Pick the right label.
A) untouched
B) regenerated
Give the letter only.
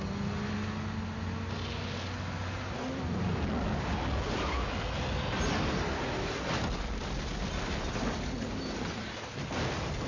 A